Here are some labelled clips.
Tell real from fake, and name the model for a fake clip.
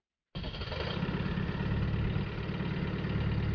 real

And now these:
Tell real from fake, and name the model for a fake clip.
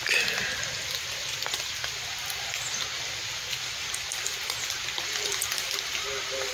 real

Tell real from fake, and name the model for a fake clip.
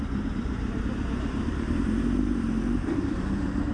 fake, vocoder, BigVGAN v2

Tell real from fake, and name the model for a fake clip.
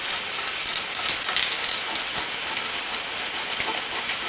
real